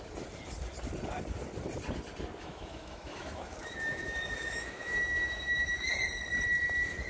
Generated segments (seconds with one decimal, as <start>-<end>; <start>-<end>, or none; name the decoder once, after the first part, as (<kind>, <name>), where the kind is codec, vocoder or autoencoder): 2.4-5.9 (autoencoder, DAC-VAE)